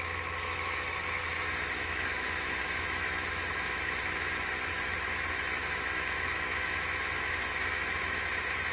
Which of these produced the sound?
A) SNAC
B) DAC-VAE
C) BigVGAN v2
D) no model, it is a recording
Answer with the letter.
B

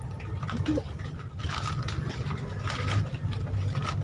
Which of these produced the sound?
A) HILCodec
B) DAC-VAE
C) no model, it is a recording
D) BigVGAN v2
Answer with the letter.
C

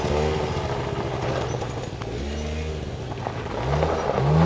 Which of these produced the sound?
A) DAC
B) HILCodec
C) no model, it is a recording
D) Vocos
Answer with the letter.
C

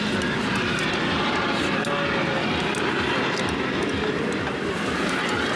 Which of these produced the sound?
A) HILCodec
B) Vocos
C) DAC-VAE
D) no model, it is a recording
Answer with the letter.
D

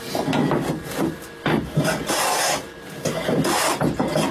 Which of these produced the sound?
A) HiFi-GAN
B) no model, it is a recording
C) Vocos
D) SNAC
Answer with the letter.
B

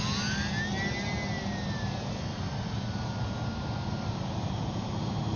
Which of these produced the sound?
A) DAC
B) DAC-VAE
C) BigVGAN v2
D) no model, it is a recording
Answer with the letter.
D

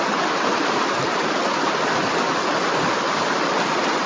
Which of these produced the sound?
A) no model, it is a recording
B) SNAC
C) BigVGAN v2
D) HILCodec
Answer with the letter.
A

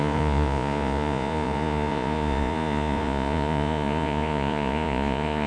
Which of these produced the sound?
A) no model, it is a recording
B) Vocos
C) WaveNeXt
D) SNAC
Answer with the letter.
B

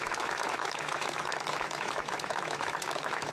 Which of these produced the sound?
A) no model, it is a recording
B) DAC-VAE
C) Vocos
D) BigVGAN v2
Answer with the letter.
B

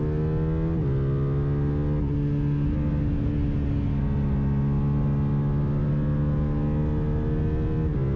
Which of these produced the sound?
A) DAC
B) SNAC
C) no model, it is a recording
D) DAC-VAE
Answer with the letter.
C